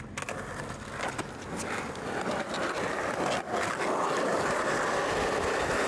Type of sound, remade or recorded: recorded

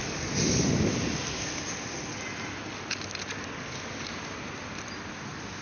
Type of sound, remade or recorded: recorded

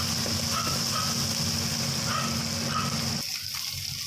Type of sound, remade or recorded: recorded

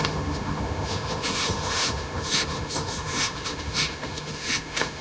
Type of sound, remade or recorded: remade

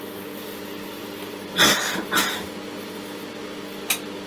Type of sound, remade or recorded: recorded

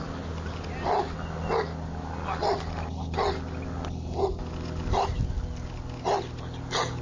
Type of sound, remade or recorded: recorded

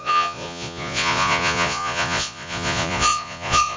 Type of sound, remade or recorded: remade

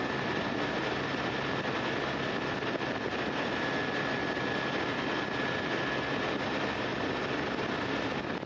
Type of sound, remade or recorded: recorded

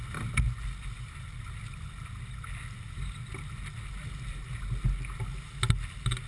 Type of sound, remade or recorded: recorded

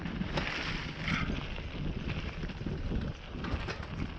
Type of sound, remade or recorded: recorded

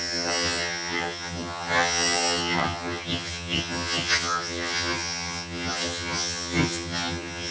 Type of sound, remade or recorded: remade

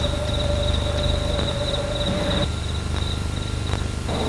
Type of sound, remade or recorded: recorded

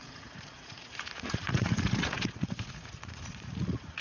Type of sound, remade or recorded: remade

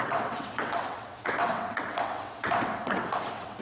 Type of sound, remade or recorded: remade